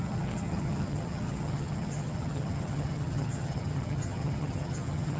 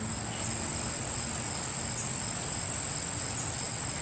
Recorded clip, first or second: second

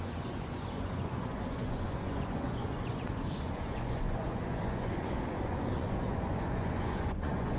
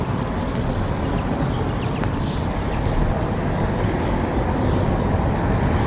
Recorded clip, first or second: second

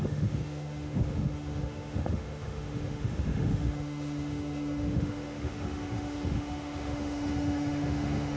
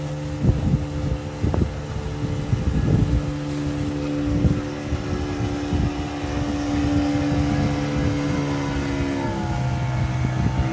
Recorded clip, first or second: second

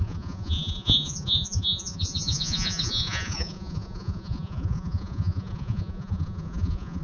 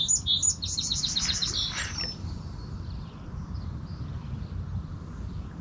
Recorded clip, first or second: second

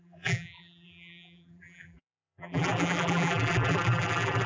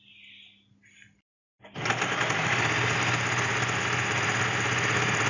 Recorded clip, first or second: second